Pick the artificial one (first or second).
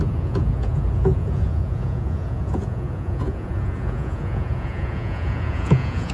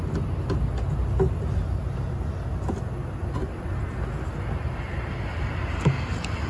first